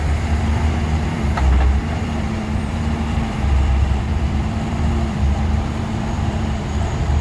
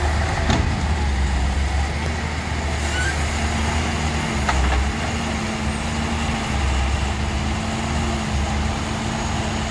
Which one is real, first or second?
second